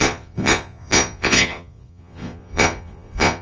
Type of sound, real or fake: fake